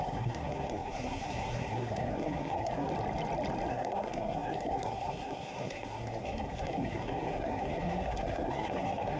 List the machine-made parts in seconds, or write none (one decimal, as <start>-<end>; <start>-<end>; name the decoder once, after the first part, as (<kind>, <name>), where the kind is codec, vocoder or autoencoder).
0.0-2.9 (codec, SNAC); 3.7-9.2